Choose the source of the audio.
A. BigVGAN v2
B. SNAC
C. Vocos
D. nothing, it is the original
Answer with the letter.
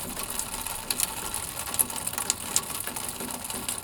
D